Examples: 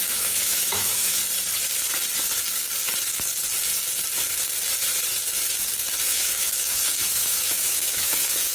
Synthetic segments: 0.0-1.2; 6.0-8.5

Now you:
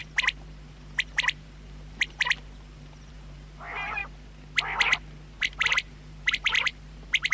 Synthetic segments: 0.0-4.0; 5.4-7.3

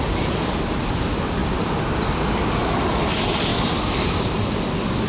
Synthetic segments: 3.5-4.6

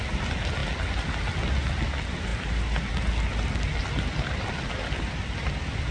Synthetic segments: none